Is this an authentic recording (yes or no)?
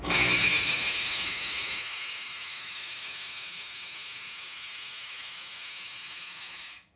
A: no